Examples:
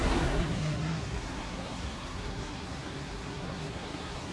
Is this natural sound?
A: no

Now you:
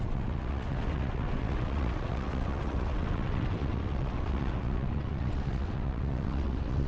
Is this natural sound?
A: no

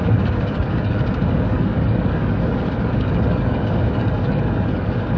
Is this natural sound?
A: no